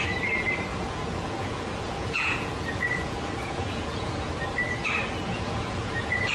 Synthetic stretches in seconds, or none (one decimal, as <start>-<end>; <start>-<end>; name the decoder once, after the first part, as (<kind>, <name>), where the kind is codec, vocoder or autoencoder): 0.7-4.3 (vocoder, Vocos); 5.3-6.3